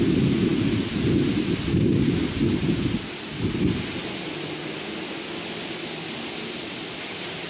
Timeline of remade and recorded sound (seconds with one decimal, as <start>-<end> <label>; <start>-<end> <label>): 0.0-7.5 recorded